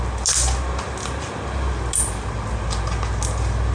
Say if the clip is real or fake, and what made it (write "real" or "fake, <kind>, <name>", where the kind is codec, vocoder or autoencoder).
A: real